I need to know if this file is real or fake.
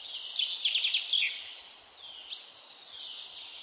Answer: real